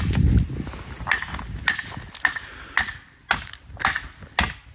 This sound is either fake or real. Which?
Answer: real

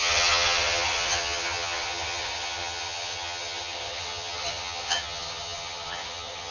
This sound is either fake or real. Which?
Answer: fake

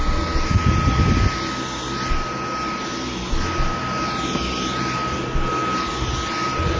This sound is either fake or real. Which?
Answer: real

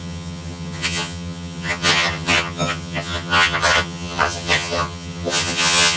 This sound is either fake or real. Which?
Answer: fake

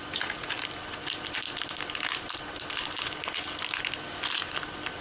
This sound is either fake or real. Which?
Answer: real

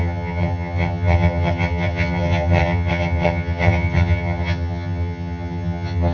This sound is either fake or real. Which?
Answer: fake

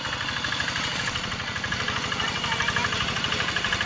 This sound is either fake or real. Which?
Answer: real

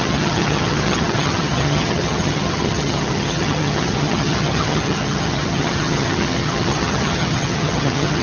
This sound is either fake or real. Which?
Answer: fake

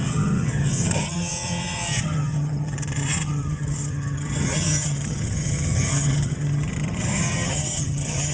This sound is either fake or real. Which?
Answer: fake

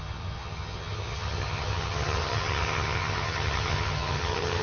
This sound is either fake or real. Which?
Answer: fake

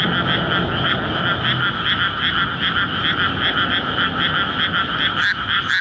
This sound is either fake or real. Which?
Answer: real